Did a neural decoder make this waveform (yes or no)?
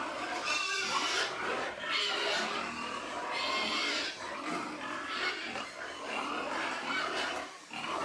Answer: no